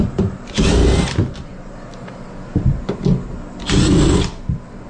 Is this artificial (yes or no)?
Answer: no